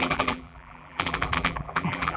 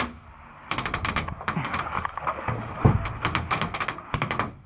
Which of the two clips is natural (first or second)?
second